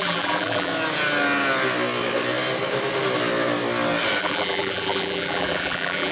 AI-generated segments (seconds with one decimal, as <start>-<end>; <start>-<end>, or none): 0.0-0.7; 4.2-6.1